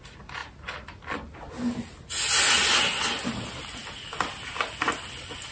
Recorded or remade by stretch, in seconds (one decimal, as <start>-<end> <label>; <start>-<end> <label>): 0.0-5.5 recorded